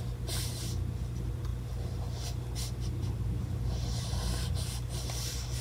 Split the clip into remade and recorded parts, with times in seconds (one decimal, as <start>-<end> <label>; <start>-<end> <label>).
0.0-5.6 recorded